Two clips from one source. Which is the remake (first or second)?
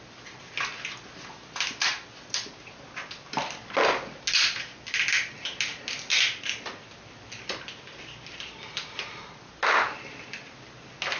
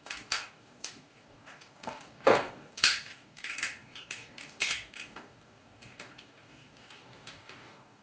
second